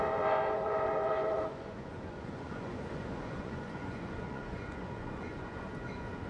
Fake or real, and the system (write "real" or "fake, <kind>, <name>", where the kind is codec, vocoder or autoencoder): fake, vocoder, Vocos